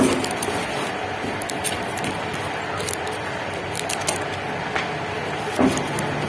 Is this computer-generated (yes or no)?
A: no